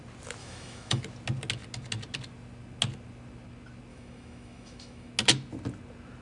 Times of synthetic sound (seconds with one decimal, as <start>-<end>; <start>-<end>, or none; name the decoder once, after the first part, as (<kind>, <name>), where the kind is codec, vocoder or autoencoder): 0.4-1.0 (autoencoder, DAC-VAE); 3.9-5.1